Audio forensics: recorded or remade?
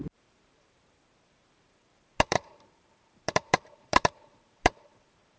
remade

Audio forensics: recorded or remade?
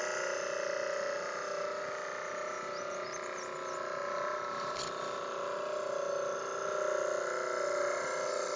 recorded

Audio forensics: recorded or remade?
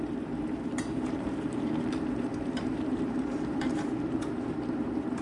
remade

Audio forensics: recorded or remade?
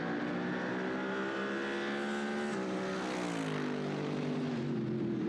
recorded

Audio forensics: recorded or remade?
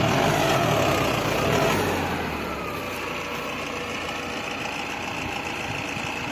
recorded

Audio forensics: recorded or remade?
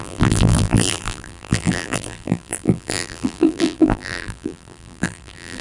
remade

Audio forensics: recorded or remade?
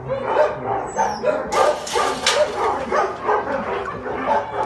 recorded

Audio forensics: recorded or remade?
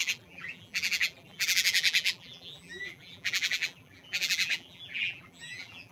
remade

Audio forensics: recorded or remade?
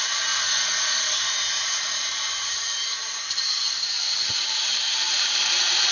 remade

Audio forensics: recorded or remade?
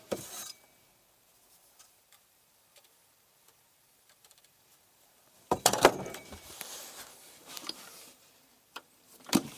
remade